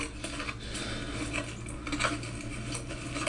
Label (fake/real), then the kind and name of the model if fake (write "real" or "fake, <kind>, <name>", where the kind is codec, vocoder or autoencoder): real